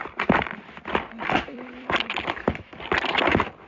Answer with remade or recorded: remade